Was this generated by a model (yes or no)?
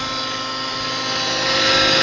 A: no